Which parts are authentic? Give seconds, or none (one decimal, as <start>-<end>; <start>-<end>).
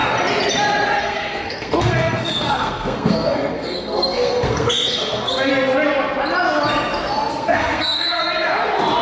0.0-1.0; 5.5-7.3; 8.2-9.0